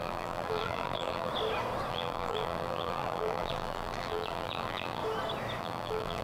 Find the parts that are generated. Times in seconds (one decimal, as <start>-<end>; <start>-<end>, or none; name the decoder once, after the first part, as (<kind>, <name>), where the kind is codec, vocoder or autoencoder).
0.0-1.3 (vocoder, BigVGAN v2); 1.9-5.0; 5.6-6.2